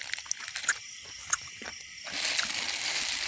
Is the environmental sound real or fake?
real